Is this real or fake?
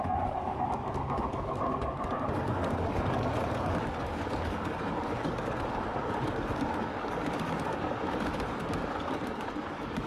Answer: fake